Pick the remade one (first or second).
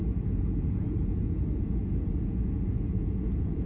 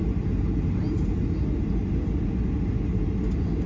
first